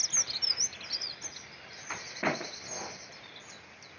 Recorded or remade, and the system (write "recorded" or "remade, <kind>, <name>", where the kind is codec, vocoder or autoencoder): recorded